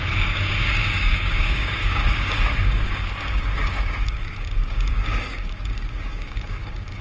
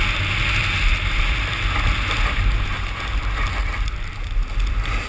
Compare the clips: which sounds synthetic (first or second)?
first